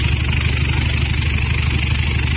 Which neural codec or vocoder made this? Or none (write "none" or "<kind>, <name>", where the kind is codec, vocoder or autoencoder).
none